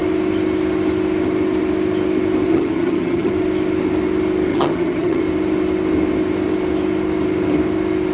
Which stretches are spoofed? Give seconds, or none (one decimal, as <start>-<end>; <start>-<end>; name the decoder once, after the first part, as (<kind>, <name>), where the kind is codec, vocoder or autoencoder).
2.5-3.3 (vocoder, HiFi-GAN); 4.5-5.2